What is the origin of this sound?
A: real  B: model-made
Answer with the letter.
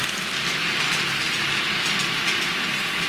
A